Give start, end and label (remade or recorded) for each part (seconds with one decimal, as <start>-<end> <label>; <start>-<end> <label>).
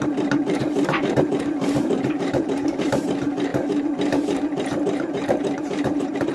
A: 0.0-6.3 remade